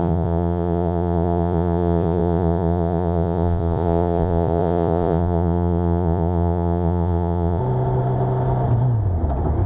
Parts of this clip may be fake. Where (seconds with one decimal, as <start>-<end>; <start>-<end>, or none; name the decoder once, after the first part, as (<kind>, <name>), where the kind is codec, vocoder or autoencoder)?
0.0-7.6 (vocoder, Vocos)

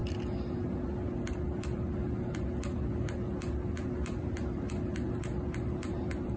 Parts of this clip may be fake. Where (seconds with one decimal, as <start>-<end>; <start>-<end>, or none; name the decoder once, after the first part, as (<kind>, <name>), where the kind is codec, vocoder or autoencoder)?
none